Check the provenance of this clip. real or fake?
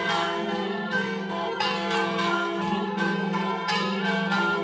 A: fake